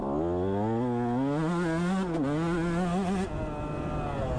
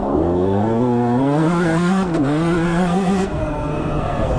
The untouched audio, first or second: first